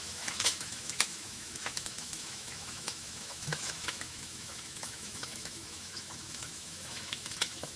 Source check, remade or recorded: remade